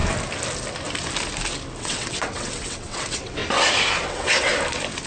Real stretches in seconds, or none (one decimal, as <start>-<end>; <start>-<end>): 0.0-1.8; 3.4-4.1; 4.5-5.1